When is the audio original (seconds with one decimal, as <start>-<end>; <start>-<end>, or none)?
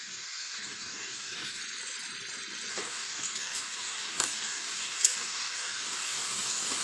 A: 1.6-2.7